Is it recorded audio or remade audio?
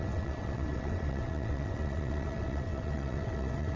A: remade